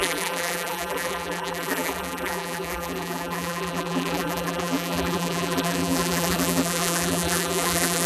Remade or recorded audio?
remade